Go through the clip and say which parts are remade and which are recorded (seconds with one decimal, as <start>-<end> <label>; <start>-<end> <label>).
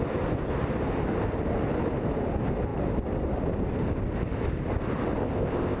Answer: 0.0-5.2 recorded; 5.2-5.8 remade